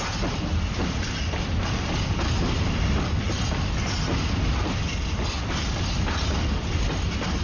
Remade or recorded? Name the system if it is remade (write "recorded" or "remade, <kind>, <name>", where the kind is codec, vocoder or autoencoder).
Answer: recorded